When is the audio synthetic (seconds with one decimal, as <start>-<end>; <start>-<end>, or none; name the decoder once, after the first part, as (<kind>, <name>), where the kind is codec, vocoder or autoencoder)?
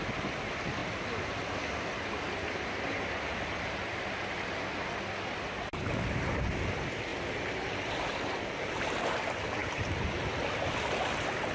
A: 0.8-5.9 (vocoder, BigVGAN v2); 7.1-8.1; 9.6-10.1